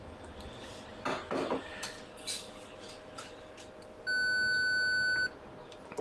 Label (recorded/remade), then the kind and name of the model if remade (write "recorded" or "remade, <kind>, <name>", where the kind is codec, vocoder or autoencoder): recorded